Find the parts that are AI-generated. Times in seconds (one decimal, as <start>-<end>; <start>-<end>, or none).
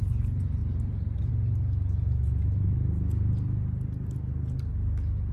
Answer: 0.6-1.3